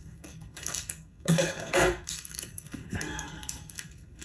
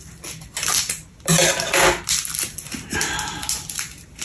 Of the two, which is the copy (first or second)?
first